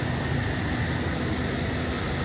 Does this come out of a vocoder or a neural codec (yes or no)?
no